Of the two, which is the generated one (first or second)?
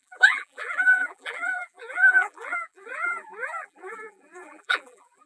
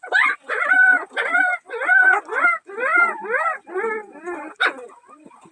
first